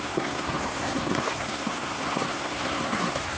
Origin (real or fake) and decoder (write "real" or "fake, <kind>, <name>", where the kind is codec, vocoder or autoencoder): fake, codec, SNAC